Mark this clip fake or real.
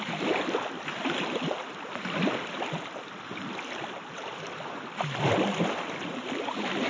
fake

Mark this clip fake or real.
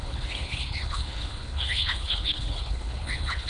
fake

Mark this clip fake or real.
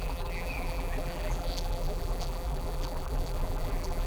fake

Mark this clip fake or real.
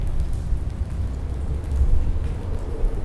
fake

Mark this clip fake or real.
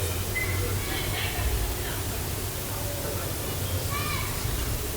real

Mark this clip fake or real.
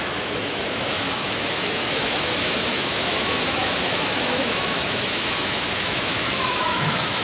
fake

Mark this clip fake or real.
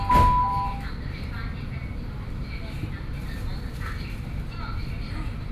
real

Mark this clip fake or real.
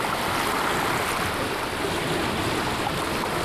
real